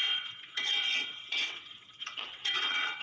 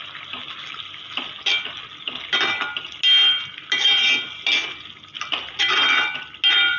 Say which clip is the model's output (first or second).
first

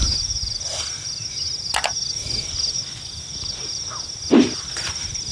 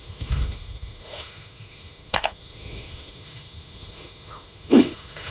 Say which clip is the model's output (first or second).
second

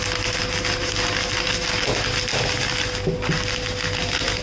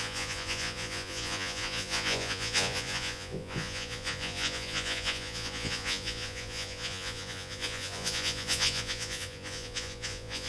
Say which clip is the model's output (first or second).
second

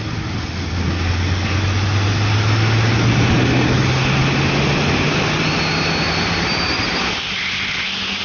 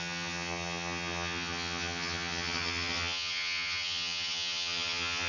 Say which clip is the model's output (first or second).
second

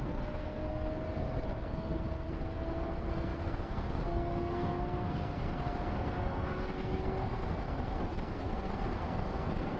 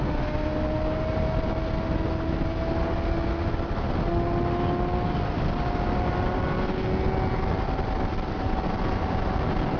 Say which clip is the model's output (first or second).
first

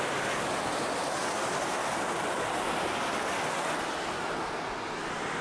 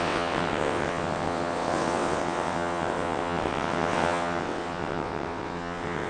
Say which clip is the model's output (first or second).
second